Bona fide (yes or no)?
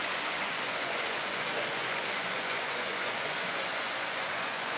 no